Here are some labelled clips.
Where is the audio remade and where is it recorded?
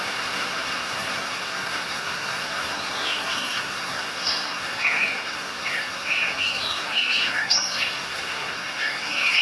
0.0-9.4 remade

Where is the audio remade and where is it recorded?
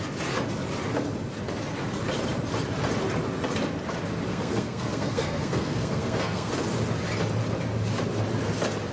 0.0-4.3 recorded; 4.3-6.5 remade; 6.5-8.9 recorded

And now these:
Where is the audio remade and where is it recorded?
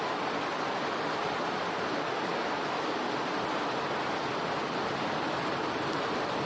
0.0-6.5 recorded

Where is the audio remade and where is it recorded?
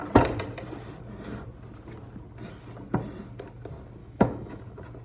0.0-4.0 recorded; 4.0-4.6 remade; 4.6-5.0 recorded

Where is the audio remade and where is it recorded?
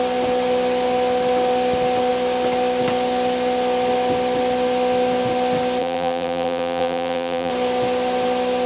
0.0-5.8 recorded; 5.8-7.5 remade; 7.5-8.7 recorded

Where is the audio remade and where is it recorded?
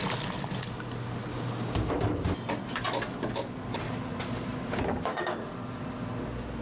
0.0-1.3 recorded; 1.3-1.9 remade; 1.9-6.6 recorded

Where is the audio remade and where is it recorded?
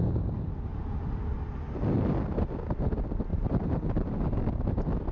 0.0-0.7 recorded; 0.7-1.2 remade; 1.2-3.3 recorded; 3.3-4.2 remade; 4.2-5.1 recorded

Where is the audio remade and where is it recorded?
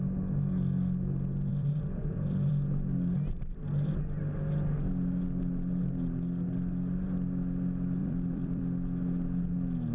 0.0-1.5 recorded; 1.5-2.5 remade; 2.5-8.0 recorded; 8.0-8.6 remade; 8.6-9.9 recorded